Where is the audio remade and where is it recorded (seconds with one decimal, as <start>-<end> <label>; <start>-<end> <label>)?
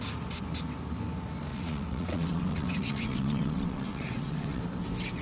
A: 0.0-1.5 recorded; 1.5-4.6 remade; 4.6-5.2 recorded